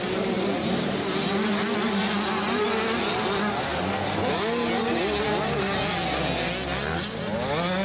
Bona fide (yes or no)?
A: yes